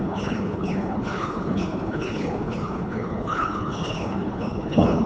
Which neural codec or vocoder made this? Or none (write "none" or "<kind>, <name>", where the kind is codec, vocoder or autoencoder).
codec, HILCodec